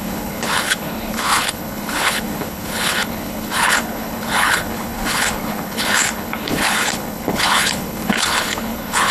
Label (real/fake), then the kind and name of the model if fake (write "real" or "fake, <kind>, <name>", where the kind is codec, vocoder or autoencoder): fake, codec, HILCodec